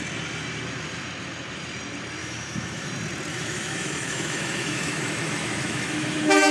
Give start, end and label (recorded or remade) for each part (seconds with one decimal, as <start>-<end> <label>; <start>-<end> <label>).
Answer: 0.0-2.2 recorded; 2.2-2.9 remade; 2.9-3.3 recorded; 3.3-6.5 remade